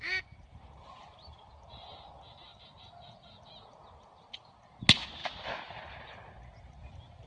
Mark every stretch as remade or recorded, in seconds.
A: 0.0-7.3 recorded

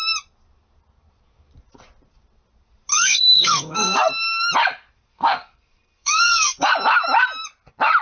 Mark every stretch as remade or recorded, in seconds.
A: 0.0-2.9 recorded; 2.9-4.1 remade; 4.1-5.1 recorded; 5.1-6.7 remade; 6.7-8.0 recorded

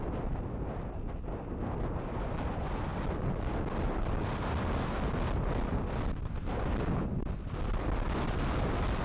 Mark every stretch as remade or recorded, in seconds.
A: 0.0-9.0 recorded

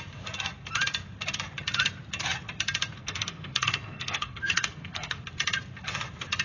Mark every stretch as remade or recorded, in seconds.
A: 0.0-3.0 recorded; 3.0-5.2 remade; 5.2-6.4 recorded

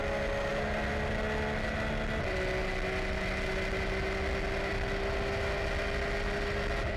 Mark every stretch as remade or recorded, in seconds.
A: 0.0-7.0 recorded